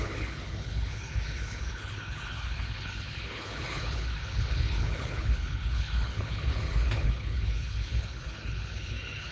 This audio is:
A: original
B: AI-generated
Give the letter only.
B